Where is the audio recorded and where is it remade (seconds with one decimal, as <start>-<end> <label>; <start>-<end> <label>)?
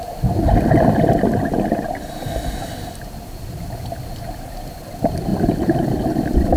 0.0-5.3 recorded; 5.3-6.6 remade